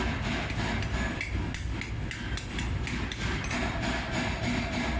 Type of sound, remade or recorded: recorded